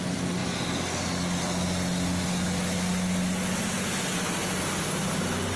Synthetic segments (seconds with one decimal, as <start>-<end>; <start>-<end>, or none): none